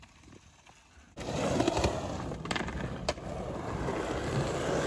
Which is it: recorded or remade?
recorded